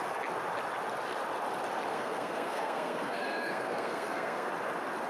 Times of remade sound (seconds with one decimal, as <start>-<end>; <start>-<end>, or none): 1.9-4.5